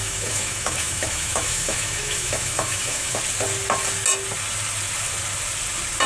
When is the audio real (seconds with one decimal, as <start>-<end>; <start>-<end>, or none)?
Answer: 3.2-6.1